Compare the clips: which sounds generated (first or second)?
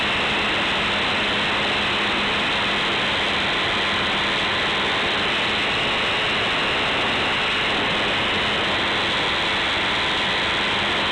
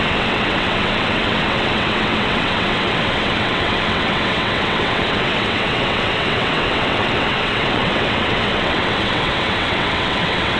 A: second